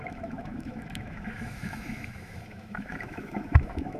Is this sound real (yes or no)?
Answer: no